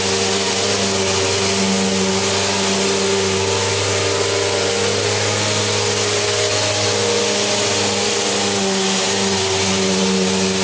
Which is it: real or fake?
real